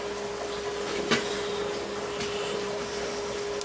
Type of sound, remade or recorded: recorded